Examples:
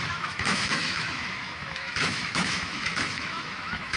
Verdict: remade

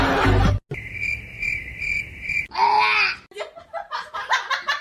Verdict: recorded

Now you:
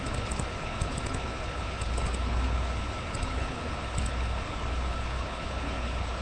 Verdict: remade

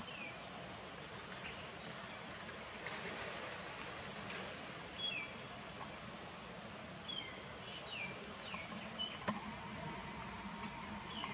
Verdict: recorded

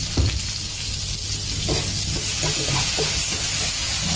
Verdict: recorded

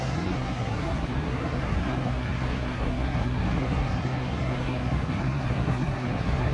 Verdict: remade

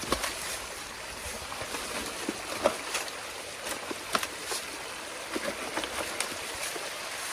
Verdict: recorded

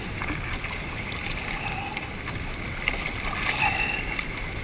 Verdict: recorded